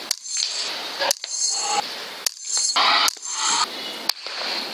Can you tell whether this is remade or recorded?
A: recorded